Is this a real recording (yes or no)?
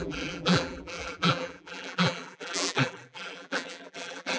no